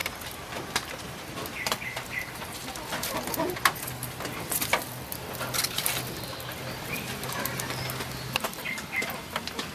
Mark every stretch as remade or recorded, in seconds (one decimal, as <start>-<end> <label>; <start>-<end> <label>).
0.0-9.7 recorded